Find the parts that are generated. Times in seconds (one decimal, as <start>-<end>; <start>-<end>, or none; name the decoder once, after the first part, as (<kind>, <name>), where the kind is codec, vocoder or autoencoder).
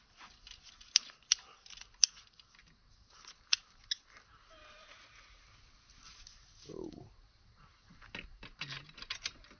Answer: 4.8-5.4 (vocoder, Vocos)